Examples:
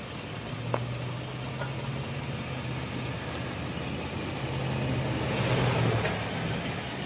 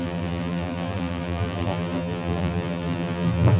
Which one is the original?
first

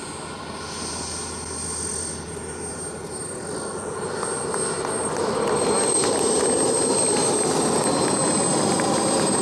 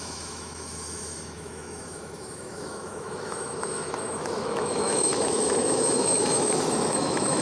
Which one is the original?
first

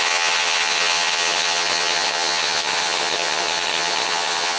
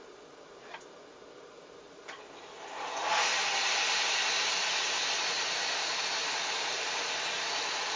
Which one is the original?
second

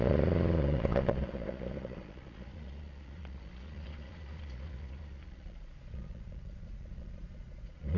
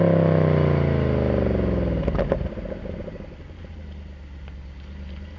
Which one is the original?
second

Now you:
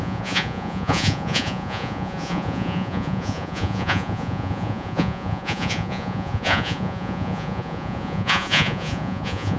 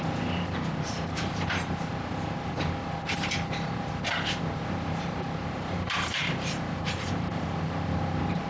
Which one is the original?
second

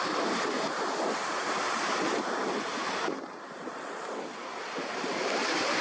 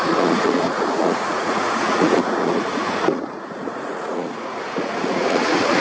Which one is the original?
first